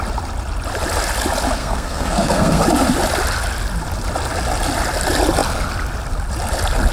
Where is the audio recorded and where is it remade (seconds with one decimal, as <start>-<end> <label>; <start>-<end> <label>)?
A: 0.0-1.6 recorded; 1.6-2.6 remade; 2.6-6.9 recorded